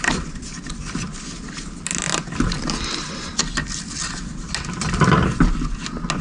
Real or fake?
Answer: real